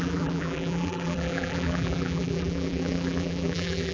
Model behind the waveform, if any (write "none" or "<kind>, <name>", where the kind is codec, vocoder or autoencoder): vocoder, BigVGAN v2